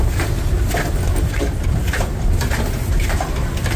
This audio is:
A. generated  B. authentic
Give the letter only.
B